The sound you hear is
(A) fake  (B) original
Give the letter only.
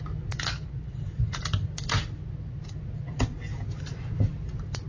B